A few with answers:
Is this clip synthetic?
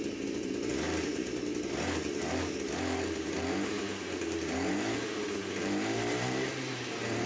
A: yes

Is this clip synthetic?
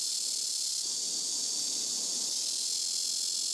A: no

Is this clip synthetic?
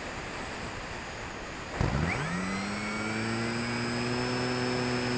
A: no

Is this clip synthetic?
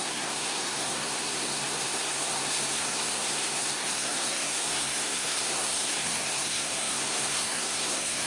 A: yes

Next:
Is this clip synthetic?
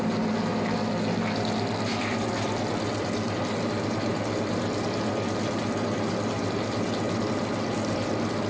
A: no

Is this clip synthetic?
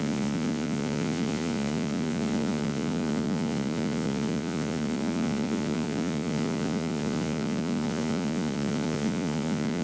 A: yes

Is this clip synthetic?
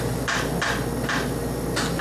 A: no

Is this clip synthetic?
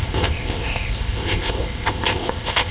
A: yes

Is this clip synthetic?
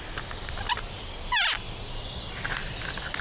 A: no